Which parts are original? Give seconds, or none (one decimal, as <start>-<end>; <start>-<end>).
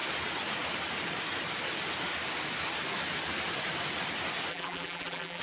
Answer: 0.0-4.5